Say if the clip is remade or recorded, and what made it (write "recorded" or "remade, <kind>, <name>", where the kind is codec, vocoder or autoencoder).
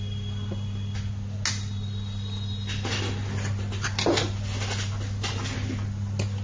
recorded